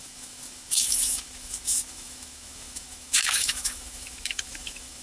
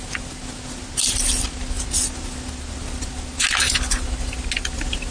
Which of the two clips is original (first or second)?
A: second